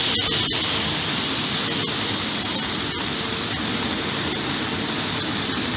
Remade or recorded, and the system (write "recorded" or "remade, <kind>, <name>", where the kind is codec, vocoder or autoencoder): recorded